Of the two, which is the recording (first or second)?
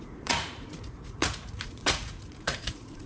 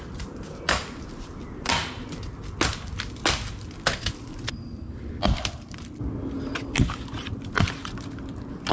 second